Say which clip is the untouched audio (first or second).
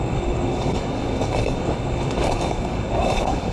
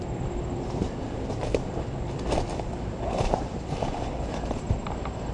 second